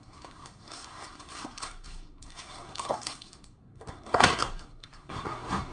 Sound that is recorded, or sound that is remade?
remade